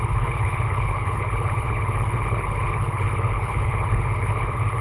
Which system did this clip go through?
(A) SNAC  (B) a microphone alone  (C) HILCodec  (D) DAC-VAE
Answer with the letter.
C